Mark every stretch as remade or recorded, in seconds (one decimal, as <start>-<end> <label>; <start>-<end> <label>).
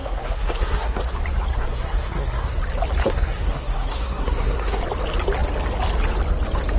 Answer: 0.0-1.0 remade; 1.0-1.5 recorded; 1.5-2.6 remade; 2.6-3.0 recorded; 3.0-4.8 remade; 4.8-6.8 recorded